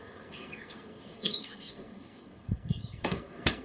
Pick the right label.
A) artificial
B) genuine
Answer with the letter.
A